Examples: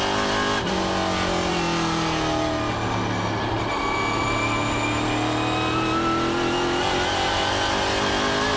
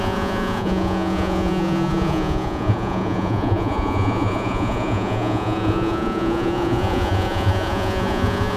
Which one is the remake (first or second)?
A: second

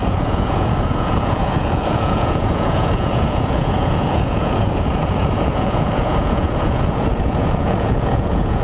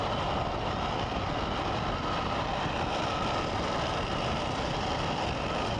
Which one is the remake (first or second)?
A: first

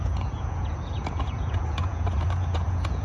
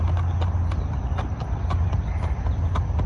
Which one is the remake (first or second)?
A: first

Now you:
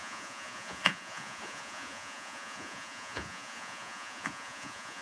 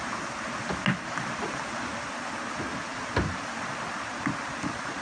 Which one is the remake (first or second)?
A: first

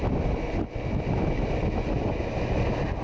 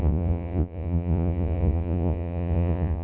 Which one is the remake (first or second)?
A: second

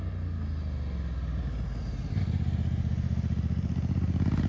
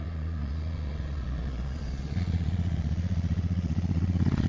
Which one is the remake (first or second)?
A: second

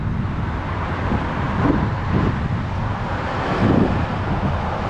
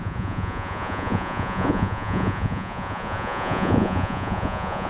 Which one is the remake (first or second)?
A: second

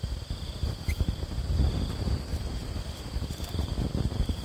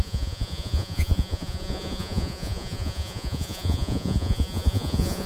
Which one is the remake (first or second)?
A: second